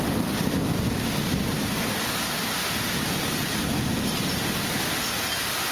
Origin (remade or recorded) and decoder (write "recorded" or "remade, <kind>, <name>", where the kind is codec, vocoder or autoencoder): recorded